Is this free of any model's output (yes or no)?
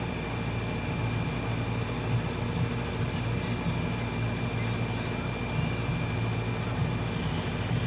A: yes